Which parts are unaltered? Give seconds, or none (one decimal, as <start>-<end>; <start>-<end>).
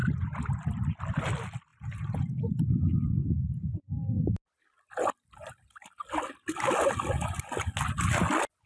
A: 0.0-8.7